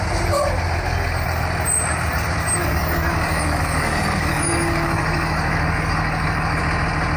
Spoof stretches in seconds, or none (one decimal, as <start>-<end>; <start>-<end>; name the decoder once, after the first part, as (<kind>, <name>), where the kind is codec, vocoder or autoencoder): 2.6-6.6 (codec, DAC)